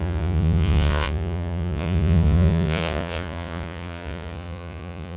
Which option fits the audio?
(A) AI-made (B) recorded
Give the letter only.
A